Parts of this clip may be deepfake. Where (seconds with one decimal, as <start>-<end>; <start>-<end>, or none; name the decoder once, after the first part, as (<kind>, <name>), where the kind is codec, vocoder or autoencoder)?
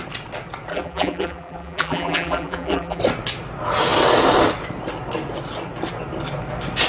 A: 0.7-3.0 (vocoder, BigVGAN v2)